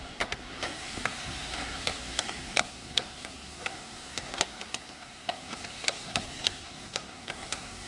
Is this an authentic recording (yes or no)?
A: no